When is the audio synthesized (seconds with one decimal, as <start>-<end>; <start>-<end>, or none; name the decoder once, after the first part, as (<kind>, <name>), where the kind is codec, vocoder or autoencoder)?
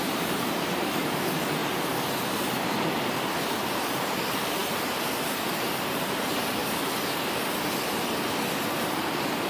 0.0-1.6 (vocoder, BigVGAN v2); 3.4-6.6; 8.8-9.5